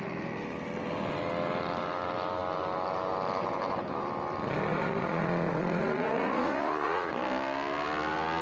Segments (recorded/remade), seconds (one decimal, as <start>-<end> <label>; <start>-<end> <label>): 0.0-4.7 recorded; 4.7-7.1 remade; 7.1-8.4 recorded

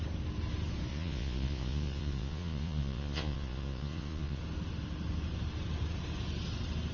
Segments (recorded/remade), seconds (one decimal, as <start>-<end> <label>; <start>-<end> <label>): 0.0-0.9 recorded; 0.9-4.4 remade; 4.4-6.9 recorded

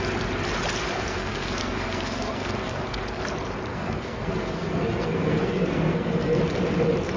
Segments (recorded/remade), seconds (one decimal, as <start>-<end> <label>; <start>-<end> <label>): 0.0-0.9 recorded; 0.9-3.2 remade; 3.2-3.7 recorded; 3.7-6.4 remade; 6.4-7.2 recorded

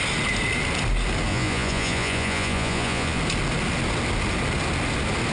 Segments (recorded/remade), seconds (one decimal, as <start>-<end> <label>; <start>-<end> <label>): 0.0-1.3 recorded; 1.3-3.2 remade; 3.2-5.3 recorded

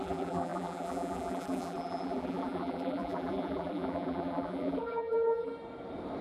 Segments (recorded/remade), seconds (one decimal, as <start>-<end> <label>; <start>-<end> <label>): 0.0-5.5 remade; 5.5-6.2 recorded